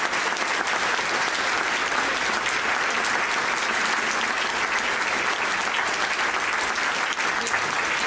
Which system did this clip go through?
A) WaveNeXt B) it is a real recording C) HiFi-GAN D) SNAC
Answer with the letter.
B